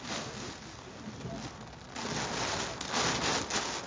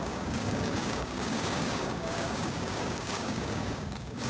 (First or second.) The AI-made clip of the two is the second